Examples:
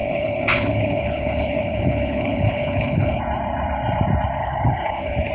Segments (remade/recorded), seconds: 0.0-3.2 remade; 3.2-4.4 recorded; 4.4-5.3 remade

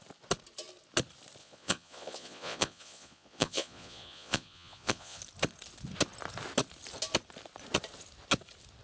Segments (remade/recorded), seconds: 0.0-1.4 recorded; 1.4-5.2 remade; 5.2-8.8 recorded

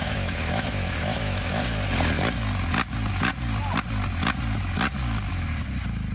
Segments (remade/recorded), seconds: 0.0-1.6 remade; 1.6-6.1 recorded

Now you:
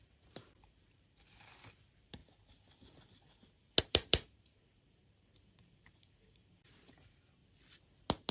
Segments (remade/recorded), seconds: 0.0-2.2 remade; 2.2-3.8 recorded; 3.8-7.4 remade; 7.4-8.3 recorded